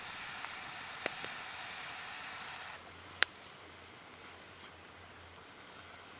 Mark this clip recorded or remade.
recorded